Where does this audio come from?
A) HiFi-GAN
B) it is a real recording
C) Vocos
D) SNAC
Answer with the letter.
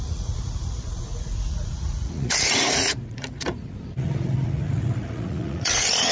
C